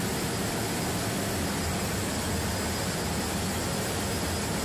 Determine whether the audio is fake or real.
real